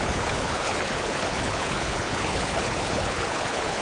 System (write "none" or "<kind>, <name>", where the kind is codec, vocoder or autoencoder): codec, HILCodec